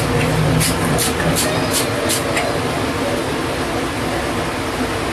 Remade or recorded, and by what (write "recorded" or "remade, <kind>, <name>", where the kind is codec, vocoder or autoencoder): remade, vocoder, BigVGAN v2